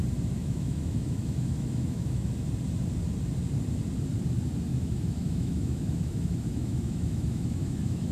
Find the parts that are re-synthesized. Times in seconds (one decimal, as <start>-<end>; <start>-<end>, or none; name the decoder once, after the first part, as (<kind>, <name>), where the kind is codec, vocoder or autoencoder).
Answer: 0.4-2.3 (autoencoder, DAC-VAE); 4.7-8.1